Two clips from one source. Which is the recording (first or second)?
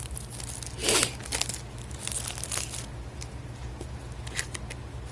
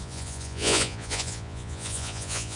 first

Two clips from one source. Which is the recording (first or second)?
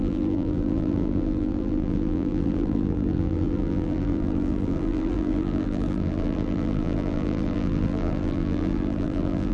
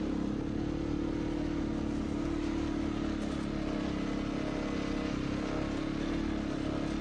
second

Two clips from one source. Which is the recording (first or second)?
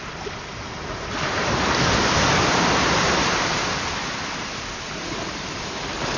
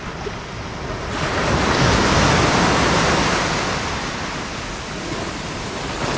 second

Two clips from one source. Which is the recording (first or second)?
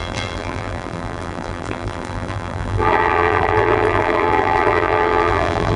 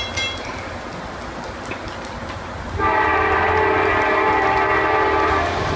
second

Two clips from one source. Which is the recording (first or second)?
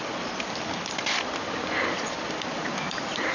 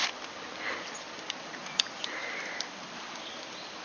second